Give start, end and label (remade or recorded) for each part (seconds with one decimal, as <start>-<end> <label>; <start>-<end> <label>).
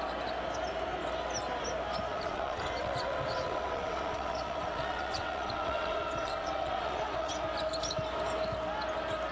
0.0-2.1 recorded; 2.1-7.3 remade; 7.3-9.3 recorded